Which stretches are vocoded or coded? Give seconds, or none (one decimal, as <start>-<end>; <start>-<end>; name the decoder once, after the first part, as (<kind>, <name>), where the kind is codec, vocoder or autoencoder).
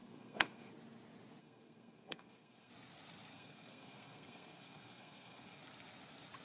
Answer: 0.0-0.7 (codec, SNAC); 1.4-2.7; 3.3-5.6